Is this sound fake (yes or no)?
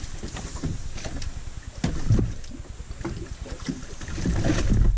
no